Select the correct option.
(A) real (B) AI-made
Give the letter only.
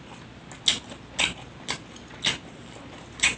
A